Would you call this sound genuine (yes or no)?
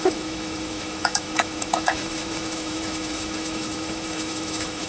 no